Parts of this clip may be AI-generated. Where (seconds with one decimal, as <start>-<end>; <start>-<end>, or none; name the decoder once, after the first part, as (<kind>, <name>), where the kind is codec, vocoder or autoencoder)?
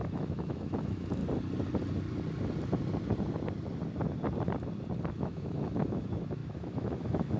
0.0-1.2 (autoencoder, DAC-VAE); 5.1-7.4